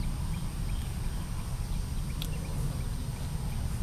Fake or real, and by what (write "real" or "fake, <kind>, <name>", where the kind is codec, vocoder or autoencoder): real